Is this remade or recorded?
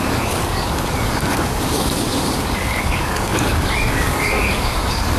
remade